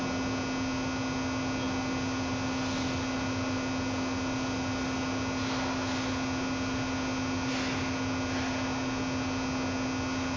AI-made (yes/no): no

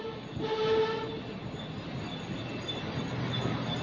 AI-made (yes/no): no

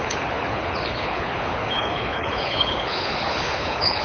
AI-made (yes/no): yes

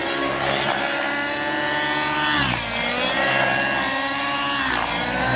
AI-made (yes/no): no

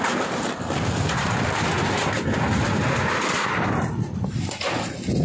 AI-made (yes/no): no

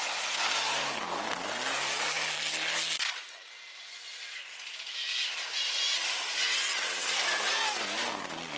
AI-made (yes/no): no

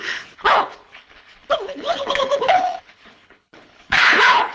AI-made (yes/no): yes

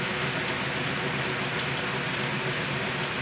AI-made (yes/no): no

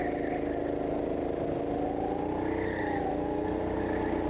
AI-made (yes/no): no